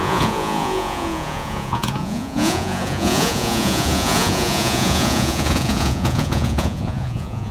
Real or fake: fake